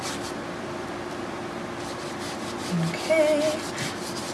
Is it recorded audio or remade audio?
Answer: recorded